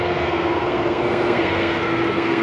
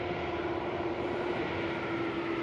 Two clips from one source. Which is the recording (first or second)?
second